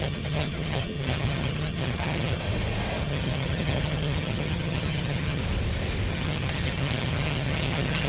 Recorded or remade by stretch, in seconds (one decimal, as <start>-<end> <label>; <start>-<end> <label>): 0.0-2.4 remade; 2.4-3.0 recorded; 3.0-5.4 remade; 5.4-6.1 recorded; 6.1-8.1 remade